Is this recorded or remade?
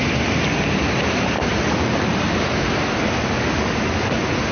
recorded